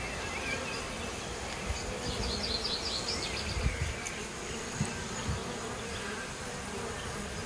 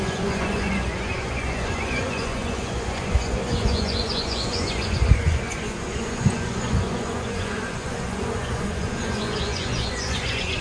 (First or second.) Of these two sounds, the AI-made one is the second